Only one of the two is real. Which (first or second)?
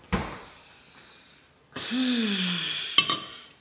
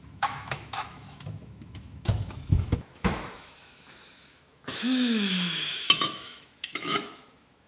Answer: first